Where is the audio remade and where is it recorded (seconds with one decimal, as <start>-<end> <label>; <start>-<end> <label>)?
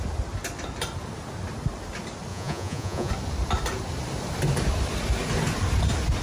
0.0-2.3 recorded; 2.3-3.1 remade; 3.1-6.2 recorded